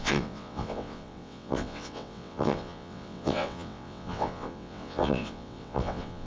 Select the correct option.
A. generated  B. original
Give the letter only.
A